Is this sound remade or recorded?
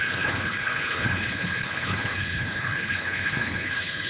remade